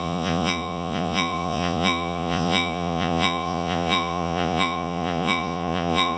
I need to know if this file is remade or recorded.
remade